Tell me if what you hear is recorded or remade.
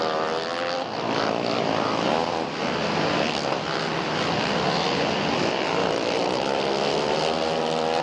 recorded